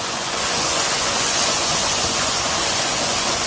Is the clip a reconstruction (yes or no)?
yes